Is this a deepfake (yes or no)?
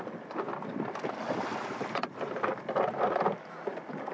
no